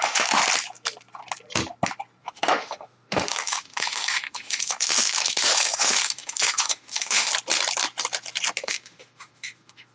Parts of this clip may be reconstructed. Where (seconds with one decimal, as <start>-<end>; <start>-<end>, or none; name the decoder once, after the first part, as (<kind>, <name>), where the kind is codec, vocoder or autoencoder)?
0.0-0.4 (autoencoder, DAC-VAE); 2.2-7.3; 8.6-9.9